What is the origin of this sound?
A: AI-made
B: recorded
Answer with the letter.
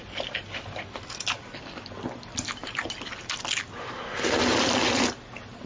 A